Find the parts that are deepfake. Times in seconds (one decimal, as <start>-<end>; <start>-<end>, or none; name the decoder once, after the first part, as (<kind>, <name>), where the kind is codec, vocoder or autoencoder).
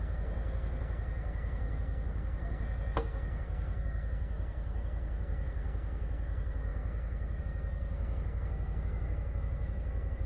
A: 0.0-10.3 (codec, SNAC)